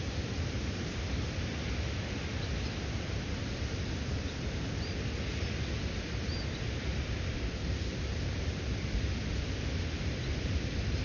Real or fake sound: real